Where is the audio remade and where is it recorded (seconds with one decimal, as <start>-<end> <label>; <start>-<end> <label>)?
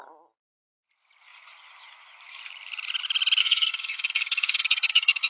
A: 0.0-3.4 recorded; 3.4-5.3 remade